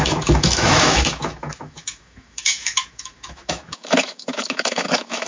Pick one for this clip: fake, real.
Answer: fake